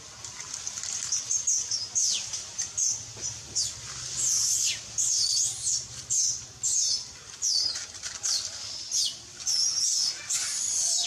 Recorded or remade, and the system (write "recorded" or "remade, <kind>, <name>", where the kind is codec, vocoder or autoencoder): recorded